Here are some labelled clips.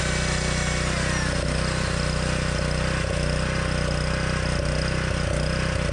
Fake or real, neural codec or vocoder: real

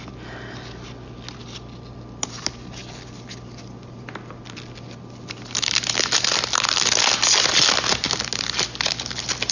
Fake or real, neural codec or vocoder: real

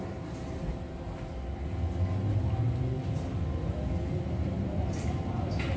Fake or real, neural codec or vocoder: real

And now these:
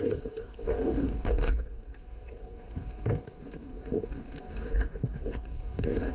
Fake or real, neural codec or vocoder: fake, codec, DAC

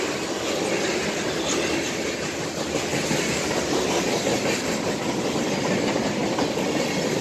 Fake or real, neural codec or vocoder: real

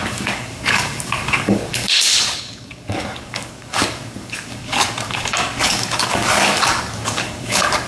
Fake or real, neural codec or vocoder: fake, codec, DAC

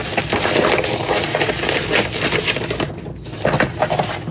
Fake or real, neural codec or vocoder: real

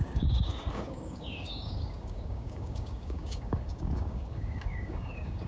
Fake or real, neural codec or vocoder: fake, codec, DAC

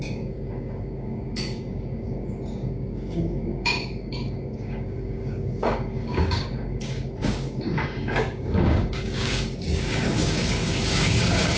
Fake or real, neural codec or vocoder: fake, codec, DAC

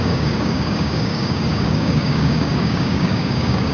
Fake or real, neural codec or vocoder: fake, codec, DAC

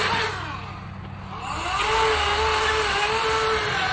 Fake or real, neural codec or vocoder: real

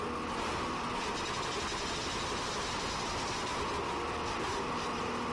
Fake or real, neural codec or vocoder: real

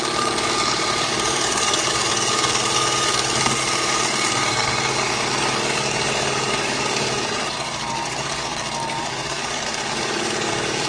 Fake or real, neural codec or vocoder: fake, codec, DAC